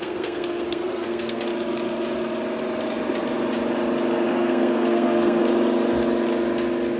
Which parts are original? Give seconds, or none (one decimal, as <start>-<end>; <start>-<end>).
1.5-4.3; 5.4-7.0